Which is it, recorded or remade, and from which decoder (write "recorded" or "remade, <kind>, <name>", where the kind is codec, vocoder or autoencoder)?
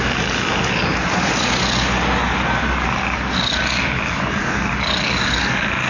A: recorded